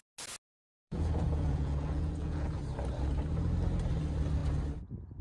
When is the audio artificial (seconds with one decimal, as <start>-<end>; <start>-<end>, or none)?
0.8-2.6